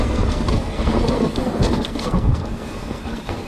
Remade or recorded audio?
remade